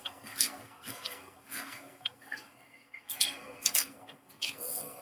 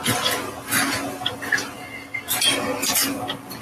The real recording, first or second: second